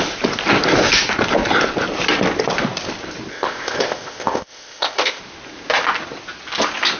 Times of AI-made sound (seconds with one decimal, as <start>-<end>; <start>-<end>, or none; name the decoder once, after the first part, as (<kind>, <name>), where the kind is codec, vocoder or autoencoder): 3.3-5.2 (codec, ZipCodec)